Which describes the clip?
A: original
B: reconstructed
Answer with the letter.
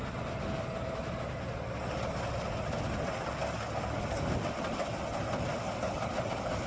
A